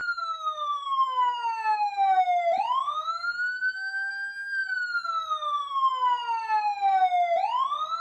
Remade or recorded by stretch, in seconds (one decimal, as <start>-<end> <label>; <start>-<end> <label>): 0.0-4.1 remade; 4.1-8.0 recorded